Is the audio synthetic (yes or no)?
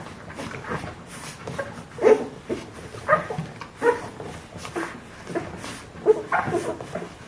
no